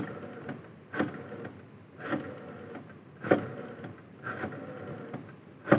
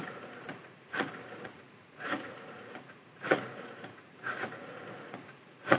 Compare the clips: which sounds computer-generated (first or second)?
second